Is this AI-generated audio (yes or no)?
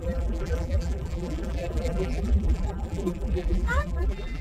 yes